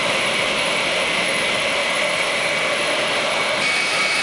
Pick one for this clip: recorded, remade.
remade